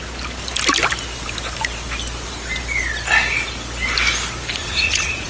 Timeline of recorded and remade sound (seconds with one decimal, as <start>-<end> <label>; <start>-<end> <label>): 0.0-4.5 recorded; 4.5-5.3 remade